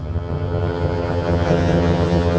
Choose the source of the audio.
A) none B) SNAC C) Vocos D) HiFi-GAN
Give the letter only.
D